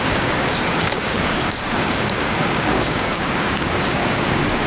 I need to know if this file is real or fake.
fake